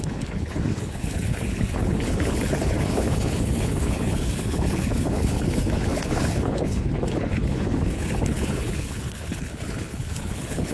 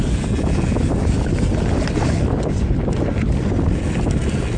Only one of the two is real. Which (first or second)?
second